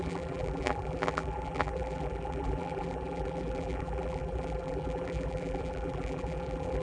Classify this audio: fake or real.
fake